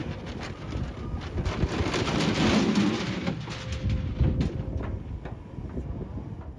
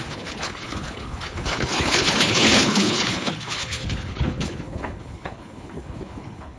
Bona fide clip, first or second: first